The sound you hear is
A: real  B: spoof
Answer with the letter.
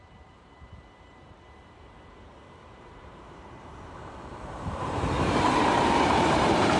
B